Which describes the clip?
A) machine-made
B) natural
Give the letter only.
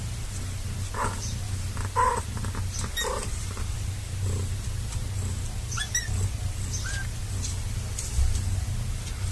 B